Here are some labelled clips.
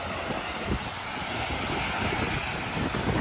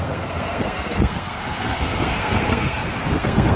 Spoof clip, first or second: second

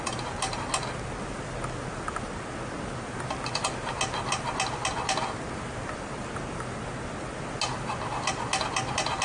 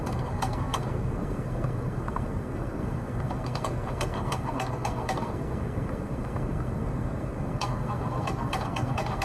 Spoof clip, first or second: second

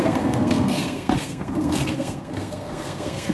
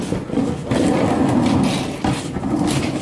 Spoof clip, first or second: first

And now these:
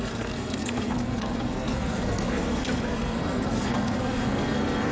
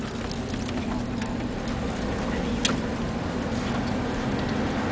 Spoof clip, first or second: first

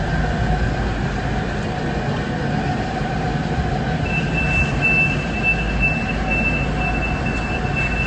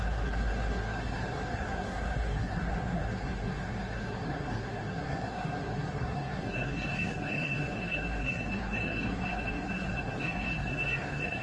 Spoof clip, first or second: second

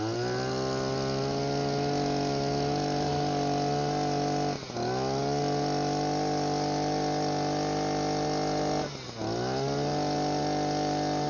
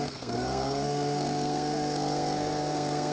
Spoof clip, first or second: second